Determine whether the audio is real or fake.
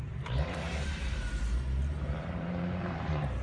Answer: fake